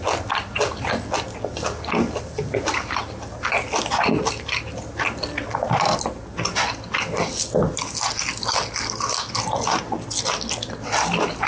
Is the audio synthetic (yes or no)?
no